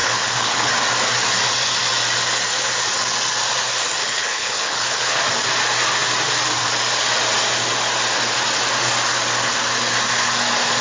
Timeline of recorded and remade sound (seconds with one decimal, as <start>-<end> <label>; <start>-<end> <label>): 0.0-0.7 remade; 0.7-4.0 recorded; 4.0-5.2 remade; 5.2-10.8 recorded